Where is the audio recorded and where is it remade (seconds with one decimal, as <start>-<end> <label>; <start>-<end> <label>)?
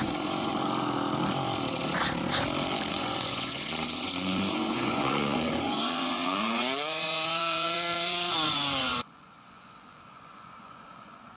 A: 0.0-0.5 remade; 0.5-2.9 recorded; 2.9-11.4 remade